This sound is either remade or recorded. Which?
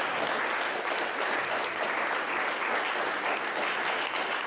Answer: recorded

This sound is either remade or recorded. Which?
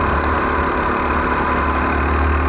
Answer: recorded